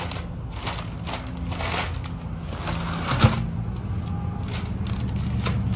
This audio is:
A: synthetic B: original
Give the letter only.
B